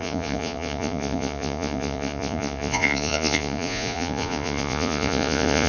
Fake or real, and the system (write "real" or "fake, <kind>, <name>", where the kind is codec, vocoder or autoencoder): fake, vocoder, Vocos